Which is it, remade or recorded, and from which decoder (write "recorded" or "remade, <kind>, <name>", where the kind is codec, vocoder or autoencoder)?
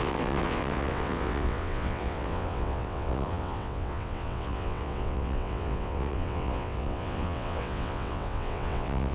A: remade, vocoder, WaveNeXt